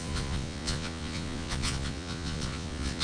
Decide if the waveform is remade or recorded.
remade